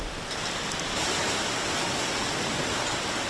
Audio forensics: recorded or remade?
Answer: recorded